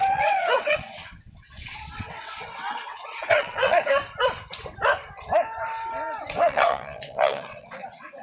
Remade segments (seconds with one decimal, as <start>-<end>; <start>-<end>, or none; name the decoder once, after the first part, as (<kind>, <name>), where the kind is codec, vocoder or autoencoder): 0.0-3.8 (vocoder, WaveNeXt); 6.2-8.2